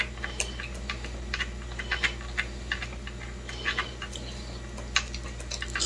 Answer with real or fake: real